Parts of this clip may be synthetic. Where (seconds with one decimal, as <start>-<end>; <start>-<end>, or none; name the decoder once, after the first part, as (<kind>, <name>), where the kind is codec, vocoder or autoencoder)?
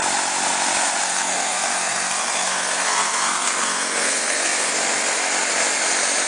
1.0-4.7 (codec, SNAC)